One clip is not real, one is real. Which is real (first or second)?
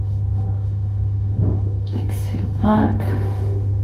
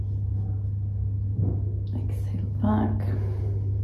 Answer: second